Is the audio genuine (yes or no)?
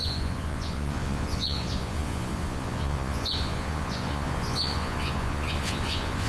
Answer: no